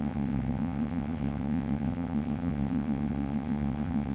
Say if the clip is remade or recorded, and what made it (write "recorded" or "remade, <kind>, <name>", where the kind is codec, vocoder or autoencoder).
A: remade, vocoder, WaveNeXt